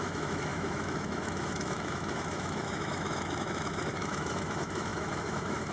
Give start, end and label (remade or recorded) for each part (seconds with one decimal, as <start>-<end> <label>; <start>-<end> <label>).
0.0-5.7 remade